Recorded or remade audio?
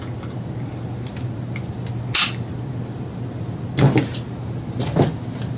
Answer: recorded